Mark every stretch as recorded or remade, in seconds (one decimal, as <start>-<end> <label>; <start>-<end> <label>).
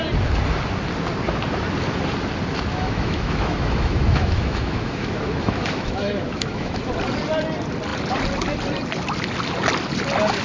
0.0-2.7 recorded; 2.7-6.9 remade; 6.9-10.4 recorded